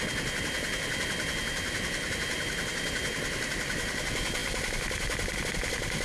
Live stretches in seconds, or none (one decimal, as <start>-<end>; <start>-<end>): 0.0-6.0